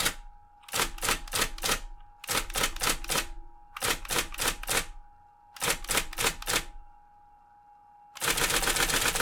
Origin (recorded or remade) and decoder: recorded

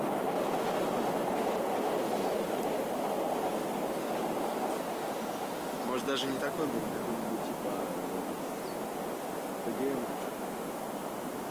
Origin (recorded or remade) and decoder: recorded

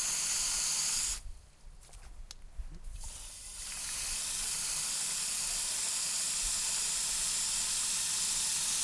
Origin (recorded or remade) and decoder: recorded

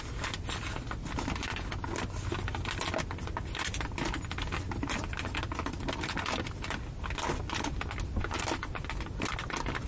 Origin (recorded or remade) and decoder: recorded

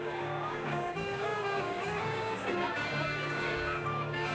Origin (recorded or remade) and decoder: remade, codec, DAC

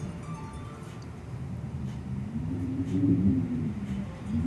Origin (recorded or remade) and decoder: remade, vocoder, BigVGAN v2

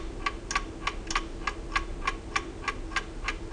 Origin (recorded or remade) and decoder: recorded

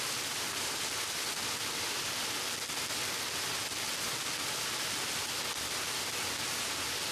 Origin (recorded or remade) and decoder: recorded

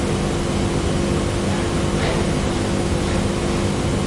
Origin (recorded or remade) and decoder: recorded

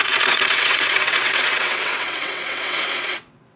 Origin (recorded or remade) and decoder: remade, vocoder, WaveNeXt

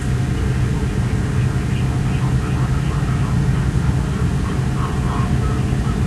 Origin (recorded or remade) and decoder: recorded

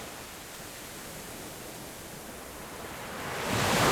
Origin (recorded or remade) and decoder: recorded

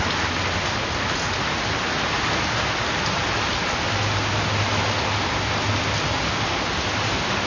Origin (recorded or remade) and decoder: recorded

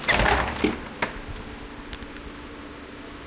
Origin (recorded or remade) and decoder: recorded